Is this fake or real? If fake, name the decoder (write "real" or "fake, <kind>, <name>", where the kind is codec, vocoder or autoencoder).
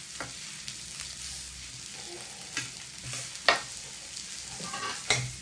real